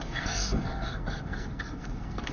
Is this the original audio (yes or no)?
no